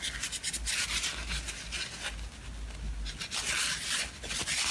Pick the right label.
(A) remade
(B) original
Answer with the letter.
B